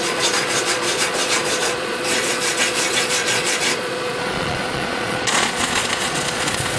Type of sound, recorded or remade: remade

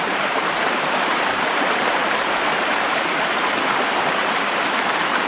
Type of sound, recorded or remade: remade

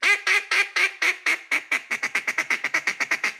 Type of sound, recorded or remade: remade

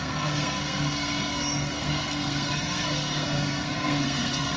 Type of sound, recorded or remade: remade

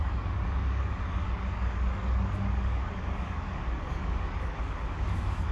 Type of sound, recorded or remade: remade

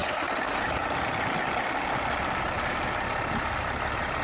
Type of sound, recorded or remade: recorded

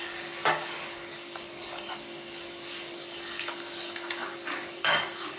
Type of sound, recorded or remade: remade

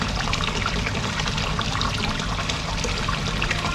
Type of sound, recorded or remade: recorded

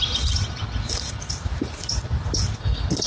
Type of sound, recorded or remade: recorded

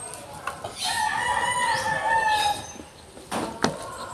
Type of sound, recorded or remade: recorded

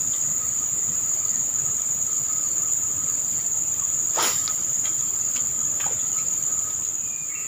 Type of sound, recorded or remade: recorded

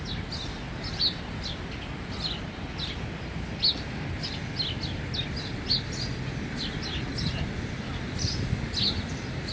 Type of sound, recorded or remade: recorded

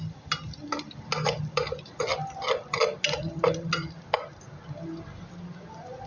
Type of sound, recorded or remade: recorded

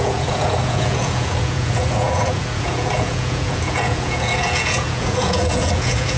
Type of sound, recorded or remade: remade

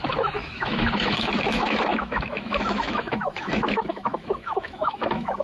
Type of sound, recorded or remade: remade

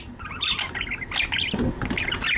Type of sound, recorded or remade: recorded